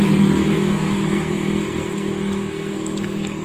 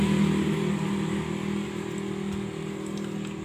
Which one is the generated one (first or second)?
first